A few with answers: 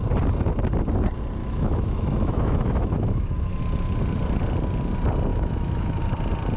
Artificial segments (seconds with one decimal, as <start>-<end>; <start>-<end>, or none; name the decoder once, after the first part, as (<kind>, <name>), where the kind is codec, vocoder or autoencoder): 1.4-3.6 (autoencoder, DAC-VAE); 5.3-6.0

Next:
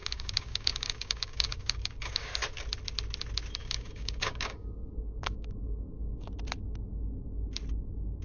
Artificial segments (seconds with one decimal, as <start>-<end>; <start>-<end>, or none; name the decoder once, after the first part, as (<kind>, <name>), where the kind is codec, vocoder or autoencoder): 0.0-2.3 (codec, DAC); 3.6-6.3

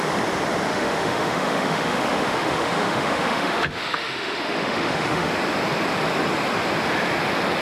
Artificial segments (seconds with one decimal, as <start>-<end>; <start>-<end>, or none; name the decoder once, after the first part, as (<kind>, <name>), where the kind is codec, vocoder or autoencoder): 0.7-5.3 (autoencoder, DAC-VAE)

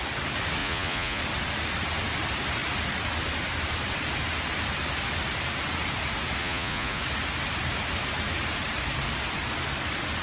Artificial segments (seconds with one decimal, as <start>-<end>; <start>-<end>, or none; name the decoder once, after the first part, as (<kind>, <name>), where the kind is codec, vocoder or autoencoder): 0.6-1.2 (vocoder, Vocos); 6.4-7.0